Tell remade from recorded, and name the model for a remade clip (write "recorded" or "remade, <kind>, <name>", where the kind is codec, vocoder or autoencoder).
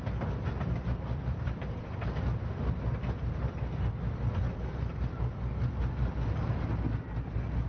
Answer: recorded